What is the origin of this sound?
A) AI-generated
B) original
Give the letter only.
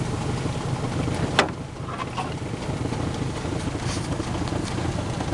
B